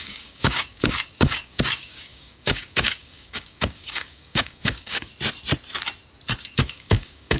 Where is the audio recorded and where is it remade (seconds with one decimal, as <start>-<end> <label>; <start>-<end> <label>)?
0.0-5.1 remade; 5.1-6.4 recorded; 6.4-7.4 remade